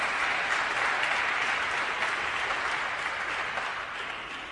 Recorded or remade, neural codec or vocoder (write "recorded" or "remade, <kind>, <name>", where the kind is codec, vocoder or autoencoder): recorded